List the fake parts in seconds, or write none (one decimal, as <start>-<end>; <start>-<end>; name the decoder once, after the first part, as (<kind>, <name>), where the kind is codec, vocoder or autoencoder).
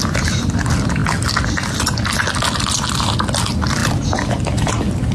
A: none